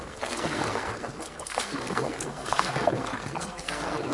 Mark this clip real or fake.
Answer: fake